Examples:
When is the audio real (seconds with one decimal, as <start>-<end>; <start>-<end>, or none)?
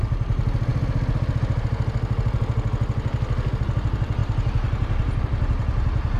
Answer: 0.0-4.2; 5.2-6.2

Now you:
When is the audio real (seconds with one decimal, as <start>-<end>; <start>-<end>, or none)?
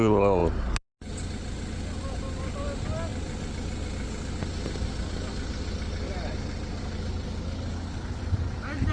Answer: 0.0-8.9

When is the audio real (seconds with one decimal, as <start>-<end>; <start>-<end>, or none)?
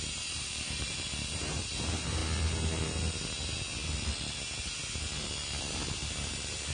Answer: 2.2-5.6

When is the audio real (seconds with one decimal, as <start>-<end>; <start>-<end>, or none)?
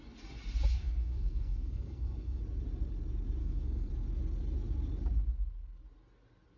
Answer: 0.0-0.7; 2.4-3.4; 3.9-6.6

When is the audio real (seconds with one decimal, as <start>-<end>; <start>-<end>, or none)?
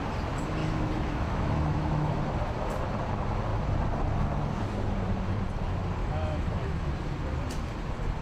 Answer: 0.0-0.6; 2.2-6.0; 6.9-8.2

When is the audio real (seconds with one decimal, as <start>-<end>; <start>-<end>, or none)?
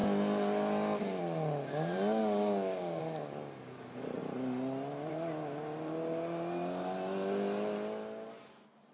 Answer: 0.0-2.2; 3.0-8.9